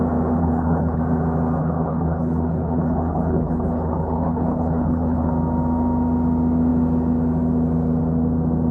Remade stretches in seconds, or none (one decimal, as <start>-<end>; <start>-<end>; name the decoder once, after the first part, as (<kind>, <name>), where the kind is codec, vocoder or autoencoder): 0.4-1.0 (codec, HILCodec); 1.6-5.3